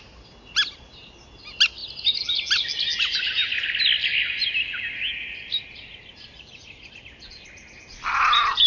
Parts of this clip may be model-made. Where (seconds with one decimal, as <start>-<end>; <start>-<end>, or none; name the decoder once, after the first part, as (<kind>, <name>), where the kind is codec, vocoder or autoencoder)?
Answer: none